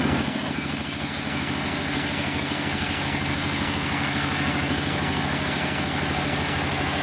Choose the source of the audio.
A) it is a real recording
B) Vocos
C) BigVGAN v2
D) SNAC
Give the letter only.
D